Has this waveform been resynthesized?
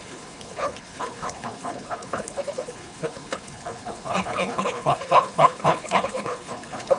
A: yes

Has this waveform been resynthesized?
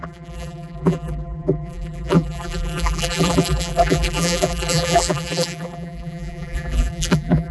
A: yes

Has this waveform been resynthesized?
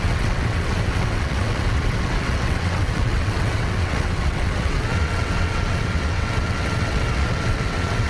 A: yes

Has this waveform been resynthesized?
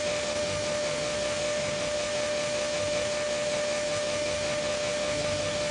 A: yes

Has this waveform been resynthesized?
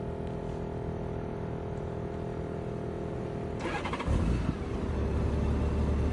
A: no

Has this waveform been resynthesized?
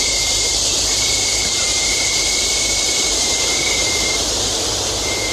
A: yes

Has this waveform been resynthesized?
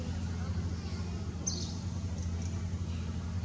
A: no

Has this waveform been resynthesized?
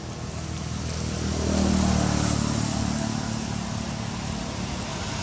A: no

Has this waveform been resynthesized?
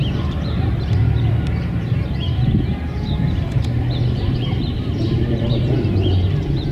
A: yes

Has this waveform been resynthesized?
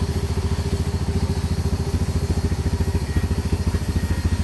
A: no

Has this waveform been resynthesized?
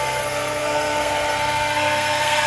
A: yes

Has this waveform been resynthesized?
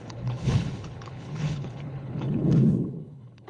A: yes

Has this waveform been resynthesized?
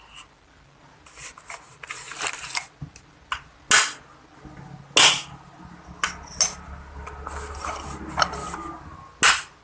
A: no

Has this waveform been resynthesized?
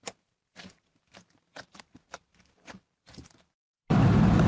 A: yes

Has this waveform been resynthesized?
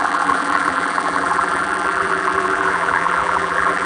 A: yes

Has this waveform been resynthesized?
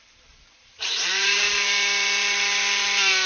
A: yes